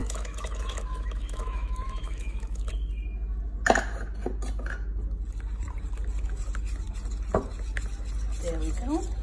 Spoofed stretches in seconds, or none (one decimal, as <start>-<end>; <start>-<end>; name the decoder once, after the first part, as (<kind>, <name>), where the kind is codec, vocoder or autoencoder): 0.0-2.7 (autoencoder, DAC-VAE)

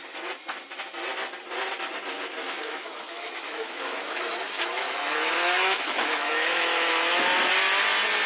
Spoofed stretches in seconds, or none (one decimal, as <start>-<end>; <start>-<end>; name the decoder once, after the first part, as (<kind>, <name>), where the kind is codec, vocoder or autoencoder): 2.4-7.2 (autoencoder, DAC-VAE)

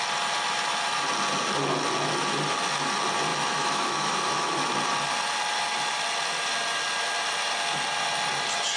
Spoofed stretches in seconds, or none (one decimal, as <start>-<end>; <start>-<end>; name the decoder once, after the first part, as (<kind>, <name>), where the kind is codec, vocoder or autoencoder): 3.3-4.7 (autoencoder, DAC-VAE)